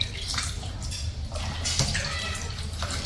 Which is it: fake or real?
fake